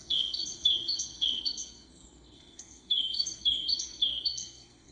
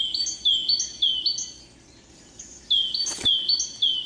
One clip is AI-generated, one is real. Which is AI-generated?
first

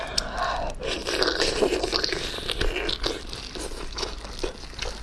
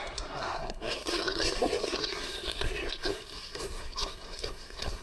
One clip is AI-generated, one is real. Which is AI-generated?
second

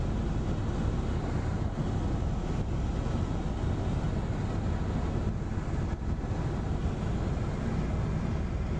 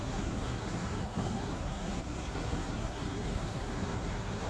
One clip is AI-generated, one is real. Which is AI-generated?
second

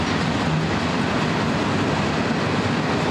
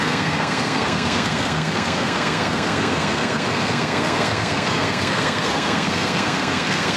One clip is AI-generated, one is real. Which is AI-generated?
second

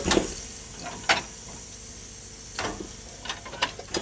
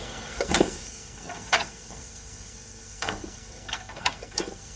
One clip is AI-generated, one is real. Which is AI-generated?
second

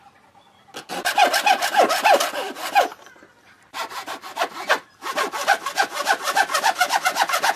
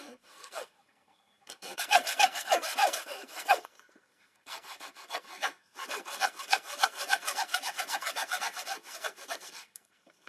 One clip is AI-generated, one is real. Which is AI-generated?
second